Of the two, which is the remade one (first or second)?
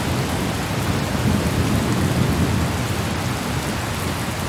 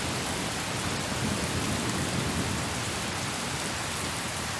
second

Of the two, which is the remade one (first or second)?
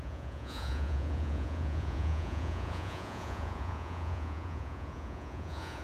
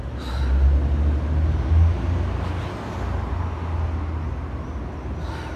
first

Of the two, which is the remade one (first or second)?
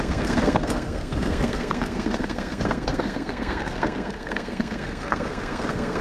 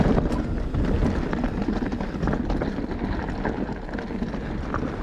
first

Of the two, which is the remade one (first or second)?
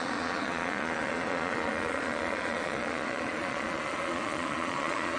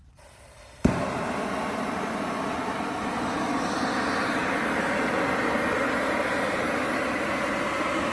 first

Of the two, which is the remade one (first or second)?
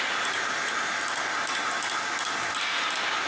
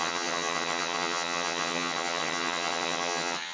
second